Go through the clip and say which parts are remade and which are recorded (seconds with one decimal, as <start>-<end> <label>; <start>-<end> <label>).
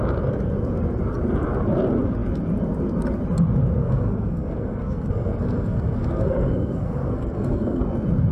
0.0-3.8 recorded; 3.8-7.8 remade; 7.8-8.3 recorded